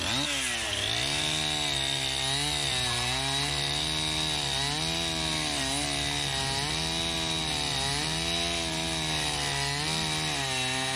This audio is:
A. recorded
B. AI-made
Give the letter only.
A